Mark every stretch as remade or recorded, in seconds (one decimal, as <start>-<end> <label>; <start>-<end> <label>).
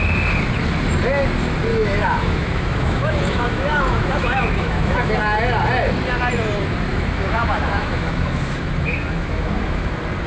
0.0-1.7 recorded; 1.7-5.1 remade; 5.1-6.9 recorded; 6.9-9.9 remade; 9.9-10.3 recorded